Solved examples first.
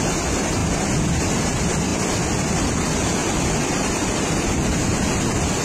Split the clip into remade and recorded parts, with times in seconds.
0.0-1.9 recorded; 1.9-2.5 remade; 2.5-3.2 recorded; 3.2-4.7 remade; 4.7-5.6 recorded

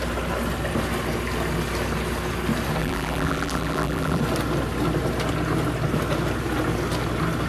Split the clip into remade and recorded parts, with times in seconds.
0.0-2.8 recorded; 2.8-4.2 remade; 4.2-7.5 recorded

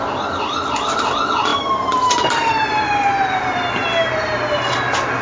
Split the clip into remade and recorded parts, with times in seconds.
0.0-1.5 recorded; 1.5-4.6 remade; 4.6-5.2 recorded

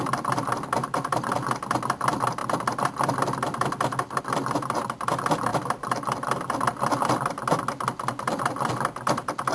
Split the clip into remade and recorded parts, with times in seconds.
0.0-5.5 recorded; 5.5-6.4 remade; 6.4-9.5 recorded

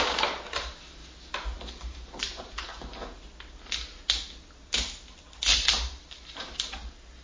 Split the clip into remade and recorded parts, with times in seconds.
0.0-1.0 remade; 1.0-1.6 recorded; 1.6-2.9 remade; 2.9-4.5 recorded; 4.5-7.2 remade